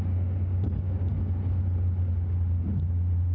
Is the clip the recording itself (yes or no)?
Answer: yes